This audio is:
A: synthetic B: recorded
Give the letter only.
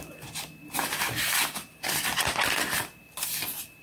A